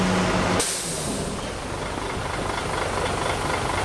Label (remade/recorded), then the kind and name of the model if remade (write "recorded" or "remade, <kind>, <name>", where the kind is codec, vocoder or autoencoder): recorded